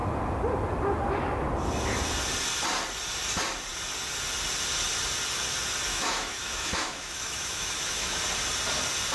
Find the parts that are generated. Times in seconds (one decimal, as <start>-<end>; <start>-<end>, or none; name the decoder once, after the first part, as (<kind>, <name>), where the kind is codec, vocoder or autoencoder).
5.9-8.2 (autoencoder, DAC-VAE)